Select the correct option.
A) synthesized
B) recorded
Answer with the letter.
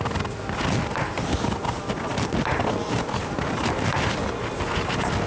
B